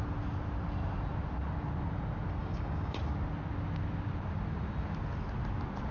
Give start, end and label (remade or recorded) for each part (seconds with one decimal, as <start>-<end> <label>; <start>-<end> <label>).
0.0-2.4 recorded; 2.4-3.0 remade; 3.0-5.9 recorded